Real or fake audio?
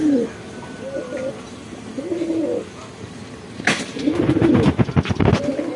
real